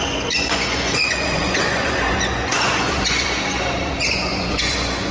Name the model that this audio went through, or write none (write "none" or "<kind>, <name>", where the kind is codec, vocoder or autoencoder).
vocoder, Vocos